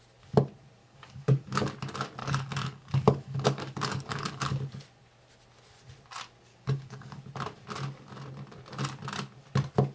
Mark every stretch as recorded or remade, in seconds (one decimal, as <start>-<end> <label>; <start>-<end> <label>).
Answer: 0.0-0.8 recorded; 0.8-1.7 remade; 1.7-2.2 recorded; 2.2-4.6 remade; 4.6-6.5 recorded; 6.5-7.2 remade; 7.2-9.9 recorded